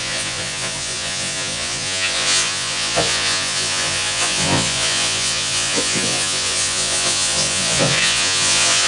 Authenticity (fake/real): fake